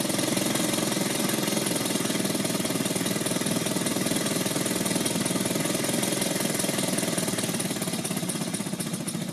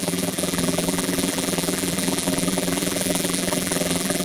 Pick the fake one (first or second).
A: second